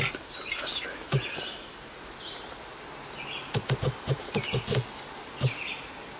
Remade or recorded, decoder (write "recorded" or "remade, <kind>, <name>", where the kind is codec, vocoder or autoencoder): recorded